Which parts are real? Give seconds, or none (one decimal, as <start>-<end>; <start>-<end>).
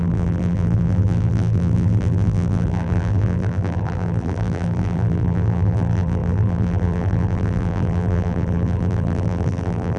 none